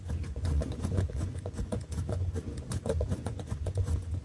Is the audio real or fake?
fake